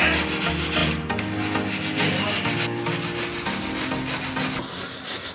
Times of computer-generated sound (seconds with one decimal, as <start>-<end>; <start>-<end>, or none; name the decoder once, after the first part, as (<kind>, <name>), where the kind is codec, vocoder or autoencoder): none